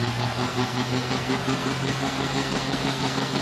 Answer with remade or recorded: remade